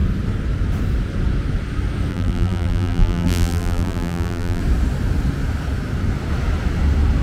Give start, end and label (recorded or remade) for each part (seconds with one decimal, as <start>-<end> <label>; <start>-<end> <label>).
0.0-2.1 recorded; 2.1-4.6 remade; 4.6-7.2 recorded